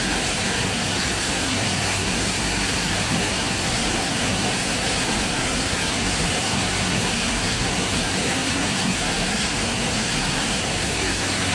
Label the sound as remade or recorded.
remade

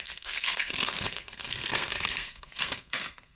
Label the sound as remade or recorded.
remade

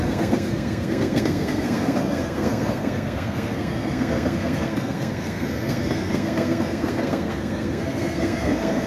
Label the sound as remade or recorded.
remade